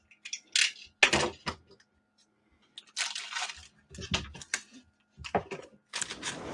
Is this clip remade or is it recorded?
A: recorded